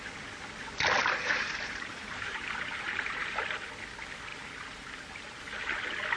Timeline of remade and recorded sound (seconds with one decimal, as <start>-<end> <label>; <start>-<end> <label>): 0.0-1.0 recorded; 1.0-3.4 remade; 3.4-4.3 recorded; 4.3-5.4 remade; 5.4-6.2 recorded